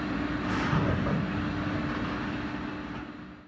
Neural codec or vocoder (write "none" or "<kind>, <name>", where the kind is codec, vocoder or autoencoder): none